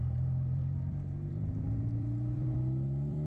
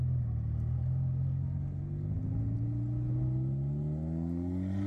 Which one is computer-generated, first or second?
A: first